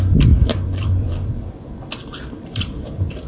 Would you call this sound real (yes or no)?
no